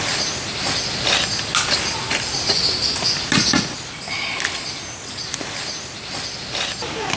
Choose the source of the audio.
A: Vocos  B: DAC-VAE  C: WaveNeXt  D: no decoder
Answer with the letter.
D